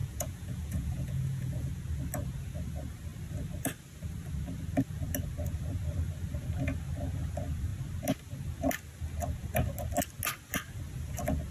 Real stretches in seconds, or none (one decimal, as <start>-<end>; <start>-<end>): 1.7-11.5